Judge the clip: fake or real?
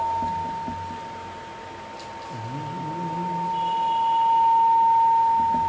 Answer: real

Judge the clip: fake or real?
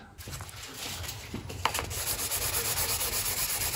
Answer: real